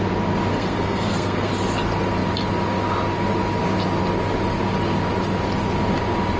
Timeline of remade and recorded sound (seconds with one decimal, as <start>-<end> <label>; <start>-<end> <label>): 0.0-0.5 recorded; 0.5-1.5 remade; 1.5-6.4 recorded